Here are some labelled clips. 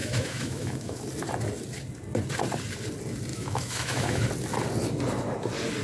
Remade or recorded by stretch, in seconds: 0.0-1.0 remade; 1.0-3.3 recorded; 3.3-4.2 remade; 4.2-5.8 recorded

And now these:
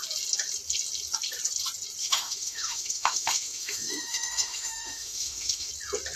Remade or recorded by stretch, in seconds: 0.0-2.0 recorded; 2.0-5.7 remade; 5.7-6.2 recorded

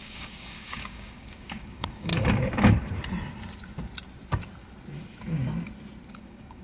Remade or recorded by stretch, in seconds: 0.0-2.1 remade; 2.1-6.1 recorded; 6.1-6.6 remade

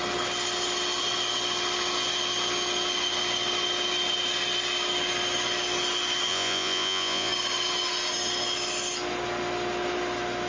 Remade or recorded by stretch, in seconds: 0.0-6.3 recorded; 6.3-7.3 remade; 7.3-10.5 recorded